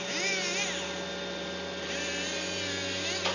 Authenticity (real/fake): real